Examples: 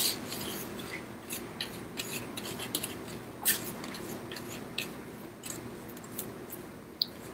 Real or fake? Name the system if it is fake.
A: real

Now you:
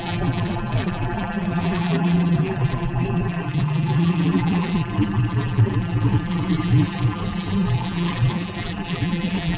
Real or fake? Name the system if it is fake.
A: fake, vocoder, BigVGAN v2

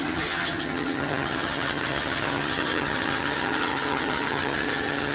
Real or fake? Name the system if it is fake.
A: fake, vocoder, HiFi-GAN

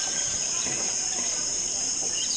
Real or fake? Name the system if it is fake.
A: fake, vocoder, BigVGAN v2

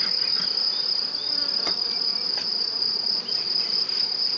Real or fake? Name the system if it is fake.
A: fake, vocoder, BigVGAN v2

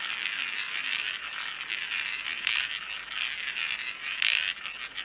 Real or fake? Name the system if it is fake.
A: real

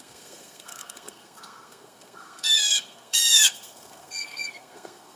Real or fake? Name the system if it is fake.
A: fake, codec, SNAC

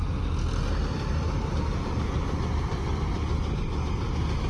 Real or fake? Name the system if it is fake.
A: real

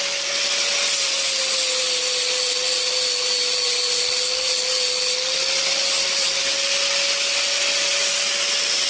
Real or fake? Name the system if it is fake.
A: real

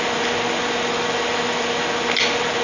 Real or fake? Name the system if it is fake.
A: real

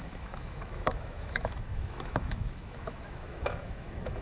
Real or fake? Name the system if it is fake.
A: fake, autoencoder, DAC-VAE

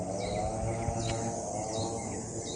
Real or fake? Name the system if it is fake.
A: real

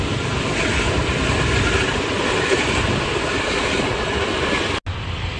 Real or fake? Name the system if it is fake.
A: real